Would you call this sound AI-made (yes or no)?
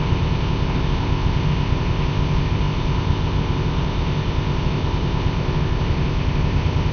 yes